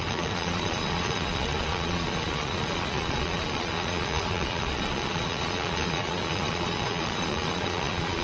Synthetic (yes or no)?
yes